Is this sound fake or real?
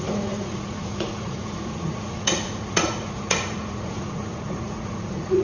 fake